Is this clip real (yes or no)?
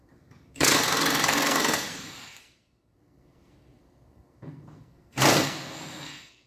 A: no